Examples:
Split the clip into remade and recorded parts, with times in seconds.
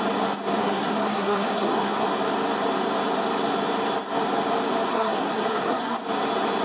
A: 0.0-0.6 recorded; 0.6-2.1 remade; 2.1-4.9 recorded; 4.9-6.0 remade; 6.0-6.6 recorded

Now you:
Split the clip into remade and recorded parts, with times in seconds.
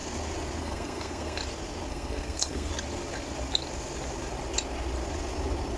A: 0.0-0.6 recorded; 0.6-1.4 remade; 1.4-1.9 recorded; 1.9-2.7 remade; 2.7-5.8 recorded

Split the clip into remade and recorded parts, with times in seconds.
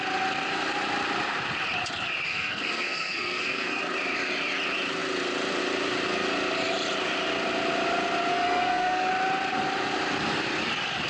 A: 0.0-2.3 recorded; 2.3-3.8 remade; 3.8-8.3 recorded; 8.3-9.1 remade; 9.1-11.1 recorded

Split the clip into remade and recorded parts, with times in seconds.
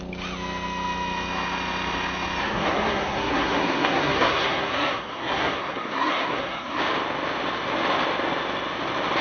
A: 0.0-2.4 recorded; 2.4-6.8 remade; 6.8-9.2 recorded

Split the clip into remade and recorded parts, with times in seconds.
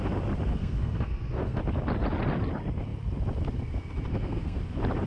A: 0.0-0.5 recorded; 0.5-1.6 remade; 1.6-4.1 recorded; 4.1-4.6 remade; 4.6-5.1 recorded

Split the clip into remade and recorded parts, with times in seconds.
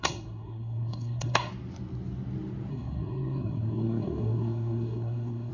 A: 0.0-1.5 remade; 1.5-2.7 recorded; 2.7-5.5 remade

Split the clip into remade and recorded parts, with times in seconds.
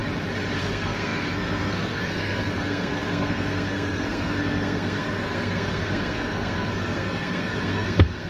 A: 0.0-0.6 recorded; 0.6-8.3 remade